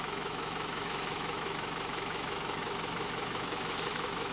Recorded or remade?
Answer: remade